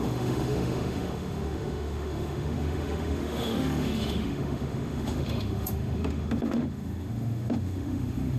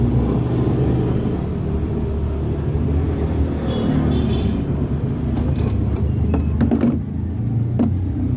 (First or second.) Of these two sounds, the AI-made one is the first